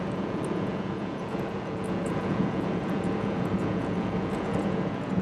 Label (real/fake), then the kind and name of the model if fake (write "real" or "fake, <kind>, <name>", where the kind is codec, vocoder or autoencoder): fake, vocoder, Vocos